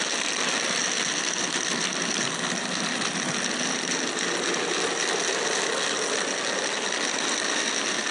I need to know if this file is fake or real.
real